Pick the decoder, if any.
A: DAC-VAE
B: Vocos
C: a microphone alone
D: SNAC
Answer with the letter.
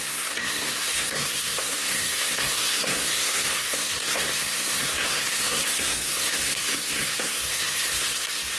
D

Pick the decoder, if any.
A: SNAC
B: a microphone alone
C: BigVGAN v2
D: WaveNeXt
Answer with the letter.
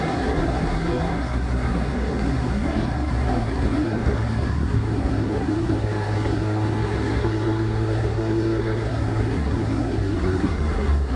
A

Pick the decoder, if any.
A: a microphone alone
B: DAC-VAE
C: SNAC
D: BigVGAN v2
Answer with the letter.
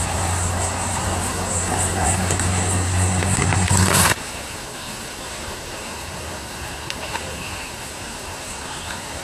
C